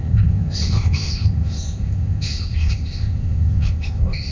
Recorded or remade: remade